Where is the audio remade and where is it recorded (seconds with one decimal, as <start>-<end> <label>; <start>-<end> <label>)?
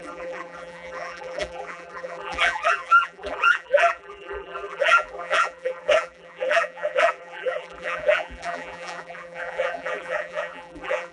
0.0-11.1 remade